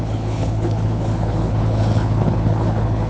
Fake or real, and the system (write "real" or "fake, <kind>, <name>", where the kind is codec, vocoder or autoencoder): fake, codec, HILCodec